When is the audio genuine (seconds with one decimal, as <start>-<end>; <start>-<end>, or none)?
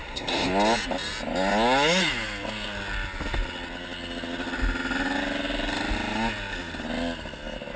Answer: 0.5-7.8